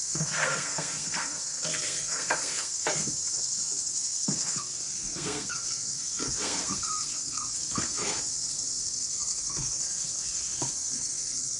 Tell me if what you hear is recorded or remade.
remade